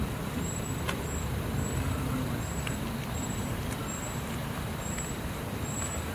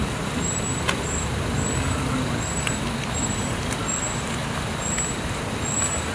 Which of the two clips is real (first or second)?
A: second